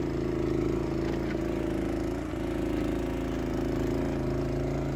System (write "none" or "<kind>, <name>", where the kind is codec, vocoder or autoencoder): none